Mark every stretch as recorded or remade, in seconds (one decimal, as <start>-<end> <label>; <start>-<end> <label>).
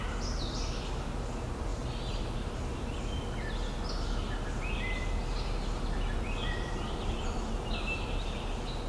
0.0-8.9 recorded